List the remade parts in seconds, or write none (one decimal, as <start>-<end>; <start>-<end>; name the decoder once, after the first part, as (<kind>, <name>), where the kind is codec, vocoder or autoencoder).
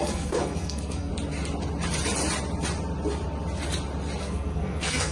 0.0-1.1 (codec, SNAC); 4.2-5.1